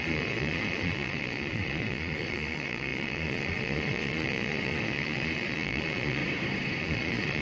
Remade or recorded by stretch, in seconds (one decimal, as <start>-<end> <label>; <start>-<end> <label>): 0.0-6.2 remade; 6.2-6.8 recorded; 6.8-7.4 remade